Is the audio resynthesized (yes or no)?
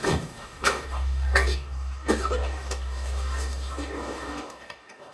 yes